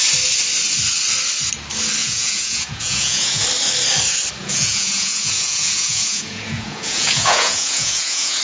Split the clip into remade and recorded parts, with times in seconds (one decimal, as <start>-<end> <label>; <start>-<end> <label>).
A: 0.0-2.0 recorded; 2.0-3.4 remade; 3.4-4.4 recorded; 4.4-8.4 remade